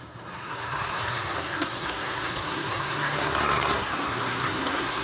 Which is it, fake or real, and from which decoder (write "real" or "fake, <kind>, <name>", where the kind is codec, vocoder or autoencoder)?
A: fake, codec, SNAC